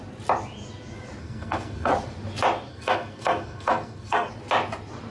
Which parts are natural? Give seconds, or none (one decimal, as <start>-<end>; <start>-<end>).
0.0-1.2; 1.9-2.7; 4.3-5.1